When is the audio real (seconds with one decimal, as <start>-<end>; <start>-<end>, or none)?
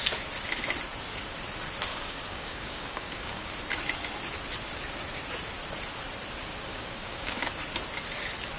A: 0.0-1.9; 3.5-6.7; 7.5-8.6